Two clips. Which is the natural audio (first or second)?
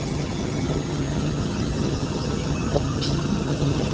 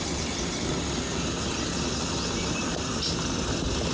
second